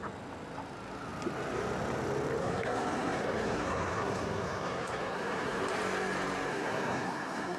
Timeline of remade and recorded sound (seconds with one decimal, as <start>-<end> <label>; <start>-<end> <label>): 0.0-2.4 recorded; 2.4-5.6 remade; 5.6-6.5 recorded; 6.5-7.6 remade